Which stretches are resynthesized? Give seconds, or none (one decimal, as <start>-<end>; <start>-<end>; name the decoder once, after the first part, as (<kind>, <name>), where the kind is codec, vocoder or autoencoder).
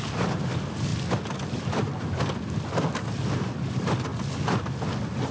none